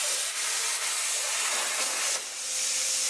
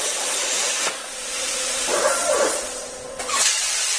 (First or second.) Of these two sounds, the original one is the first